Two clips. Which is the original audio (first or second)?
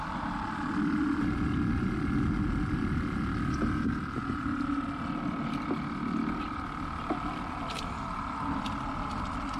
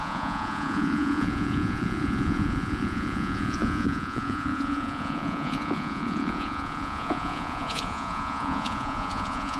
first